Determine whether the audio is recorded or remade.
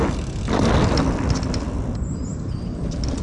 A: recorded